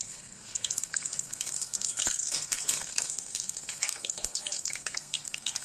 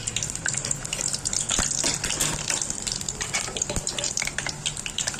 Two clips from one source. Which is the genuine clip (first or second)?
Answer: second